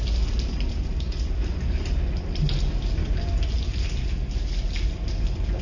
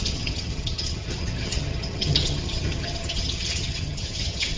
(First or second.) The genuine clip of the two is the first